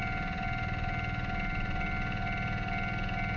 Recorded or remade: recorded